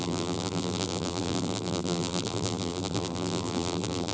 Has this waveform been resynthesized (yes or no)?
yes